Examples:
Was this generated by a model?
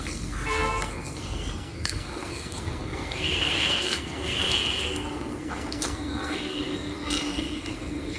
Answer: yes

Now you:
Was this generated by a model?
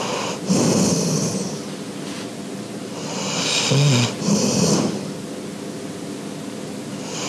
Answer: no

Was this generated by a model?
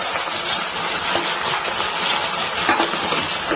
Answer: no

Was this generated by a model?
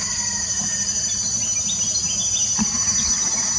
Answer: no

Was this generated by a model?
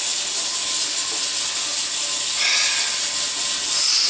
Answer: no